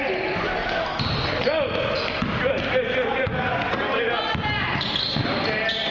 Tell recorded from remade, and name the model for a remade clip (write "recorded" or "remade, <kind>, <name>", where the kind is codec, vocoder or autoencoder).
recorded